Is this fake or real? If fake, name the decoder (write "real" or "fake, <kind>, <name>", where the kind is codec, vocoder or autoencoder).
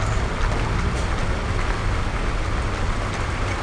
real